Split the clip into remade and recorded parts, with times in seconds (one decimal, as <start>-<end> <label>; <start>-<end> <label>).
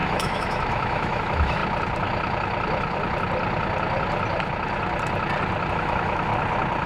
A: 0.0-1.6 remade; 1.6-5.7 recorded; 5.7-6.3 remade; 6.3-6.9 recorded